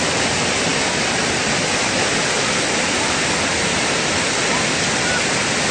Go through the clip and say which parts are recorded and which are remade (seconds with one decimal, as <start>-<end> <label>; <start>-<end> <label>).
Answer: 0.0-5.7 recorded